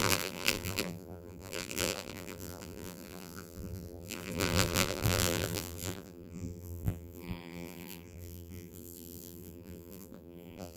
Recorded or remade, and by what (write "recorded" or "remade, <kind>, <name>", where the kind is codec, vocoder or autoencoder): remade, vocoder, BigVGAN v2